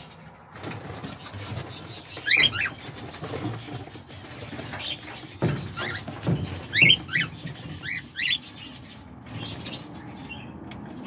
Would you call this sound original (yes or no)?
yes